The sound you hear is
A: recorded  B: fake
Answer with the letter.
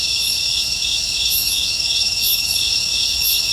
B